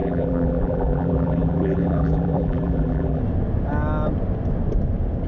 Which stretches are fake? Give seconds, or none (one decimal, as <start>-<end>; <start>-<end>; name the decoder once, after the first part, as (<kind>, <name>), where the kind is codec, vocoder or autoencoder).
0.0-3.2 (vocoder, BigVGAN v2)

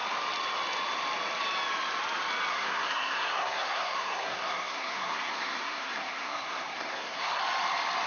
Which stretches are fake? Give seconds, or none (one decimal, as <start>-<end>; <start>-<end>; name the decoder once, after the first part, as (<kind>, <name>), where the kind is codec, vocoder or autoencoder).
2.5-7.4 (codec, SNAC)

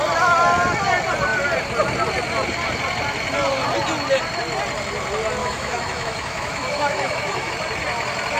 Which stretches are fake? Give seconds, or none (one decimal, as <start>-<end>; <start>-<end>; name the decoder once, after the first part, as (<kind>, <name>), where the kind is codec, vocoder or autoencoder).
5.4-7.5 (autoencoder, DAC-VAE)

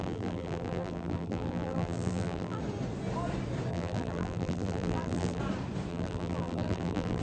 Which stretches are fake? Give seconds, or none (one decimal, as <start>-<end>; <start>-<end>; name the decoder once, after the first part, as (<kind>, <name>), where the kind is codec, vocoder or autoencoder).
0.0-2.6 (vocoder, BigVGAN v2); 3.7-5.4; 5.9-7.2

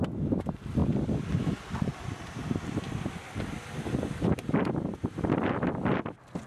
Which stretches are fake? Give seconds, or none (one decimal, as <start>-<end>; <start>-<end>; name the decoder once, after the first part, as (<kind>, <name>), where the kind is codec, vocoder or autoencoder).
none

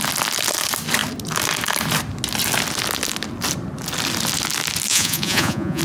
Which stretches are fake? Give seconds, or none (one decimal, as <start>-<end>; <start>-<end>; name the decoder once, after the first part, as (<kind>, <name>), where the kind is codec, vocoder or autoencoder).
4.9-5.8 (vocoder, Vocos)

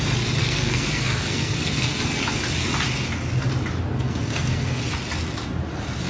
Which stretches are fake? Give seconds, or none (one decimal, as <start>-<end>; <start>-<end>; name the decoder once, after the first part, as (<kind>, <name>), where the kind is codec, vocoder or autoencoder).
0.4-2.0 (codec, SNAC); 3.9-4.8